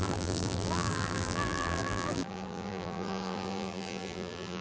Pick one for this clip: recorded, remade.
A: remade